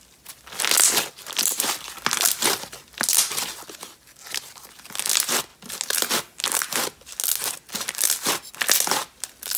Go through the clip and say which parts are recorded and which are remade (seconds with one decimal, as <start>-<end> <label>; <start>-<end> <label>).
0.0-9.6 recorded